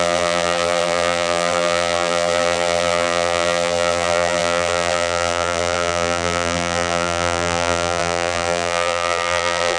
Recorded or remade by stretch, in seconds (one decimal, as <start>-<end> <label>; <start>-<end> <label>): 0.0-9.8 remade